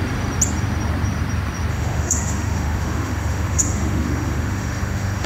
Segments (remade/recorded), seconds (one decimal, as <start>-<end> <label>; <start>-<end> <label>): 0.0-1.7 recorded; 1.7-5.3 remade